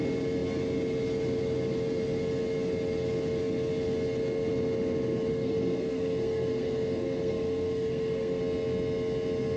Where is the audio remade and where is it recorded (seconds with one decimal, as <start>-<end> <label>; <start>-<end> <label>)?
0.0-5.3 recorded; 5.3-8.4 remade; 8.4-9.6 recorded